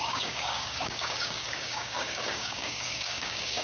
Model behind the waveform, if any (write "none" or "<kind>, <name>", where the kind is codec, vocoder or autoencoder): codec, DAC